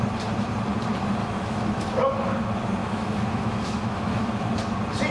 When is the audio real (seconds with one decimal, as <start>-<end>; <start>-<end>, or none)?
0.0-1.2; 2.1-2.8; 4.5-5.1